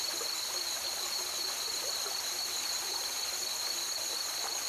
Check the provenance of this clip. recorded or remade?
recorded